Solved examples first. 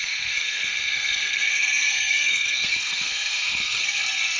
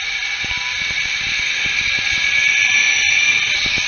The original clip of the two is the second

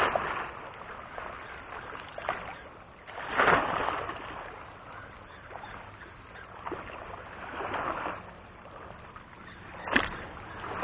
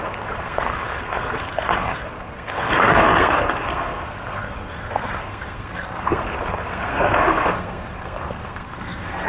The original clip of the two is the first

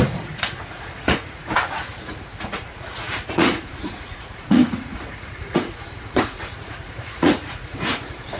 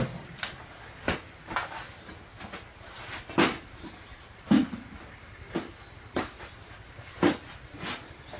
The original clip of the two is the second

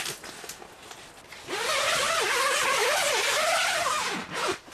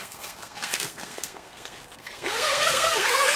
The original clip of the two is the first